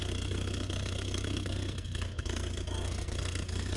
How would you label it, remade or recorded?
remade